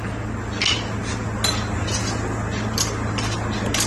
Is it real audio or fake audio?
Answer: real